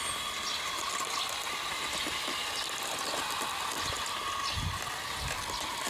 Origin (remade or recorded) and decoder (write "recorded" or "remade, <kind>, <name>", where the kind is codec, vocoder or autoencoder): recorded